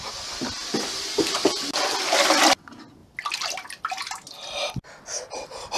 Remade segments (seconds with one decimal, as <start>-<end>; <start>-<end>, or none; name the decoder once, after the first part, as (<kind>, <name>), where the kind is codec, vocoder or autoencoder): none